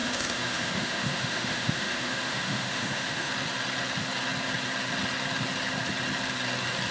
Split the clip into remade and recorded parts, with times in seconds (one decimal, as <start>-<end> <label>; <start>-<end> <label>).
0.0-3.3 remade; 3.3-6.9 recorded